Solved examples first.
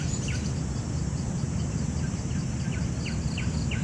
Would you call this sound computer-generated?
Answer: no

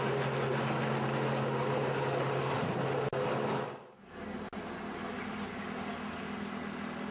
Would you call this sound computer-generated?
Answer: no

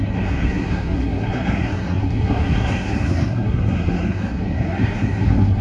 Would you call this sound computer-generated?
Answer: yes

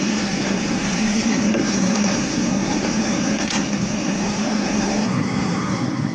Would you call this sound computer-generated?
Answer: yes